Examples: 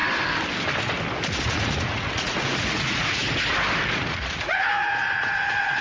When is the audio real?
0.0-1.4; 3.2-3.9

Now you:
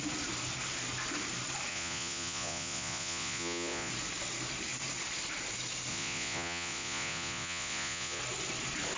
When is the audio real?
0.0-1.7; 3.9-5.9; 8.2-9.0

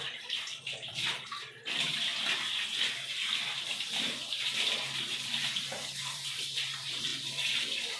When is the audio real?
2.1-3.1

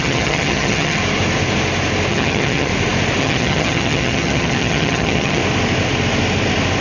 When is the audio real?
1.0-2.1; 2.7-3.2; 5.4-6.8

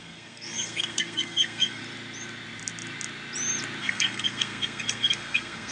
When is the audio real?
1.8-3.8

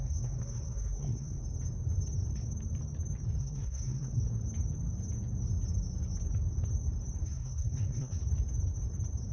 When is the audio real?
1.4-3.4; 4.2-7.2; 8.2-9.3

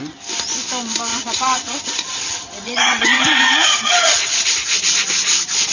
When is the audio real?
0.0-1.1; 4.5-5.7

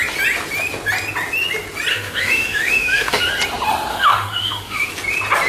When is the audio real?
0.0-1.9; 3.2-3.9; 4.9-5.5